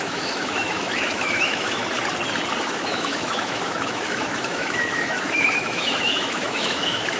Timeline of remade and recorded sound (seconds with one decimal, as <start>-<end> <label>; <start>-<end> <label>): 0.0-1.8 remade; 1.8-2.6 recorded; 2.6-7.2 remade